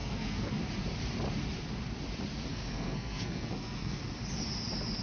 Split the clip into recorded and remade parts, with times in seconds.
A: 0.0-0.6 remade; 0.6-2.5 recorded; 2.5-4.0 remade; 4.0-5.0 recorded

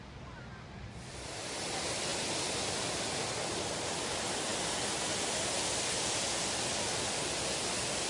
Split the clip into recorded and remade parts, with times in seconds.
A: 0.0-8.1 recorded

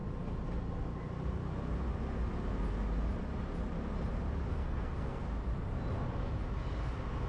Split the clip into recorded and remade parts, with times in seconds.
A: 0.0-4.5 recorded; 4.5-5.2 remade; 5.2-7.3 recorded

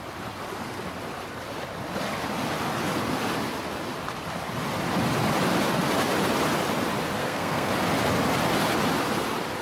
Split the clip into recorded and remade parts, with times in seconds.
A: 0.0-7.2 recorded; 7.2-7.7 remade; 7.7-9.6 recorded

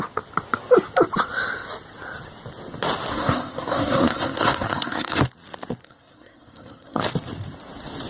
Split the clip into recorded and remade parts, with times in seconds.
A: 0.0-3.1 recorded; 3.1-5.2 remade; 5.2-5.8 recorded; 5.8-7.0 remade; 7.0-8.1 recorded